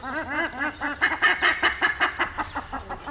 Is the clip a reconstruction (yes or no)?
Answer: no